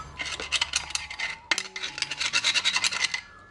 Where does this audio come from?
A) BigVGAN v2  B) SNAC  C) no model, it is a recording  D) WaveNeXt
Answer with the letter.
C